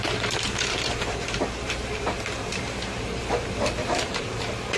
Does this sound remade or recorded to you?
remade